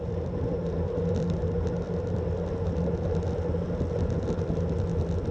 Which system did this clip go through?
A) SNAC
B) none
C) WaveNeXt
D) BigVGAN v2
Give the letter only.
B